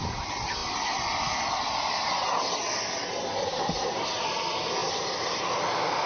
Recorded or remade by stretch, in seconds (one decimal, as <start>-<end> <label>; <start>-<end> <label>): 0.0-6.1 recorded